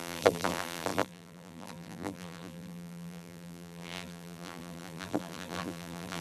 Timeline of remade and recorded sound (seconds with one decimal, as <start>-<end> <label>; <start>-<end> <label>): 0.0-6.2 remade